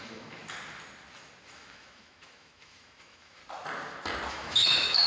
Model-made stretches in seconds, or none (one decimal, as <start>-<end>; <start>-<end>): 0.0-0.4; 1.4-3.4; 4.3-5.1